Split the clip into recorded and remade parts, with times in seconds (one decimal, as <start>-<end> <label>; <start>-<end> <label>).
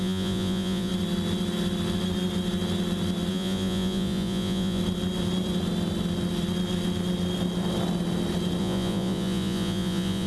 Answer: 0.0-0.9 remade; 0.9-3.3 recorded; 3.3-4.8 remade; 4.8-8.6 recorded; 8.6-10.3 remade